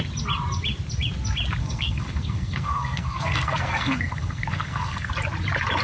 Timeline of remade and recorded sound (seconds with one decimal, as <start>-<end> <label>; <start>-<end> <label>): 0.0-1.6 recorded; 1.6-5.1 remade; 5.1-5.8 recorded